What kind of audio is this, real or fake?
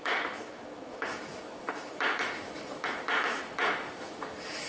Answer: fake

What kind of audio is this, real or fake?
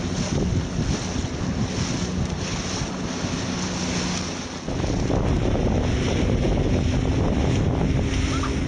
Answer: real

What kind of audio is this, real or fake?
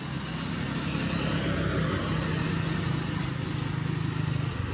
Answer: real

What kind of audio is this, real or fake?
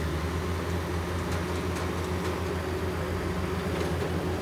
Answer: real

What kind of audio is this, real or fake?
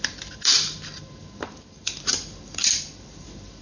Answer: fake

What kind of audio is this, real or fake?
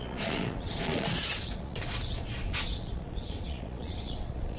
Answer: fake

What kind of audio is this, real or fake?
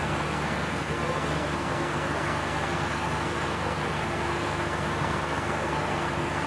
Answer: fake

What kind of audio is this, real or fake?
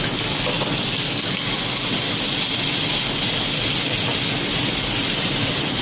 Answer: real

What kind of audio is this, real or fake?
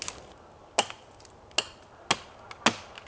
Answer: real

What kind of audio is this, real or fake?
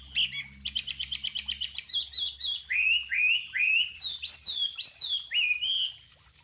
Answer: real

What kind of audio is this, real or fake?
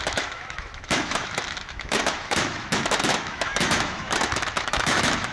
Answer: fake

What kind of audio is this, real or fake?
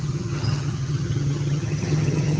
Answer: fake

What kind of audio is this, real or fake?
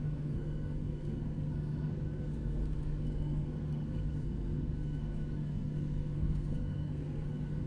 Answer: fake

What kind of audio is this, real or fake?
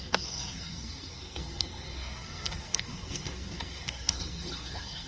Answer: fake